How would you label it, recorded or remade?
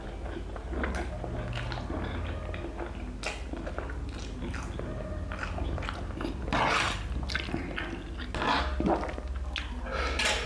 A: recorded